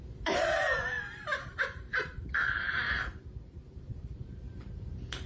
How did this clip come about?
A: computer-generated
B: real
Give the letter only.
A